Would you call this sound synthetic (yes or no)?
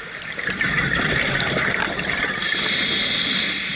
yes